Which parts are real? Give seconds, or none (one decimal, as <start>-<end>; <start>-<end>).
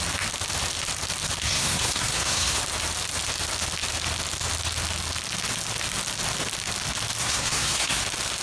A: 0.0-1.4; 2.6-7.2; 8.0-8.4